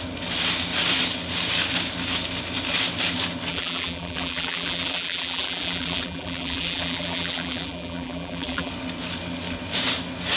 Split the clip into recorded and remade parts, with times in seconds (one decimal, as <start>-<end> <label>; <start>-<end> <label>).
0.0-3.5 recorded; 3.5-8.7 remade; 8.7-10.4 recorded